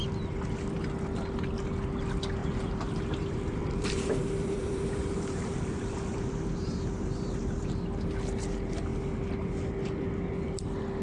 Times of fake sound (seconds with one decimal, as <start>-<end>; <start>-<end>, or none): 2.4-7.7